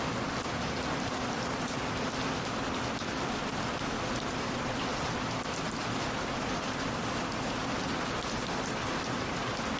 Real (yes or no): yes